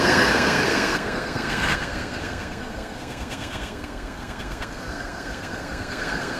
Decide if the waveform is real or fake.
fake